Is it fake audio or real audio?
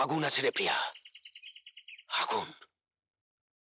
real